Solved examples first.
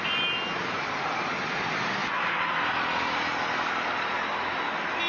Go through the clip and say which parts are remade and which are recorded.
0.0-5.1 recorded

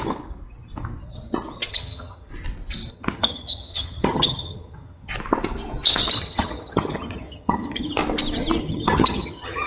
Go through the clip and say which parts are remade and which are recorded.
0.0-1.7 recorded; 1.7-2.3 remade; 2.3-2.9 recorded; 2.9-5.1 remade; 5.1-6.2 recorded; 6.2-8.0 remade; 8.0-8.6 recorded; 8.6-9.7 remade

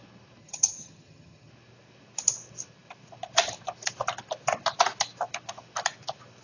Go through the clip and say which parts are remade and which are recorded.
0.0-0.4 recorded; 0.4-1.5 remade; 1.5-6.4 recorded

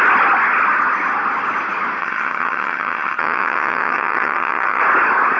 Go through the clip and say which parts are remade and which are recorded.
0.0-2.0 recorded; 2.0-4.8 remade; 4.8-5.4 recorded

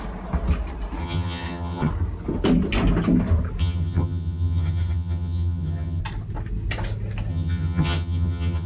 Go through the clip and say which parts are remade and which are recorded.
0.0-1.0 recorded; 1.0-1.9 remade; 1.9-3.6 recorded; 3.6-6.0 remade; 6.0-7.3 recorded; 7.3-8.7 remade